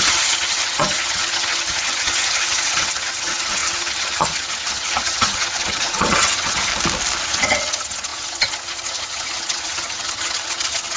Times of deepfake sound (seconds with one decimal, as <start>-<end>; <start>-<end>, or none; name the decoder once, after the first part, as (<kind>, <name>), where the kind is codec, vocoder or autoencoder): 0.0-6.7 (vocoder, HiFi-GAN); 7.2-11.0